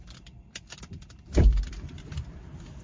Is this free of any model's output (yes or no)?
no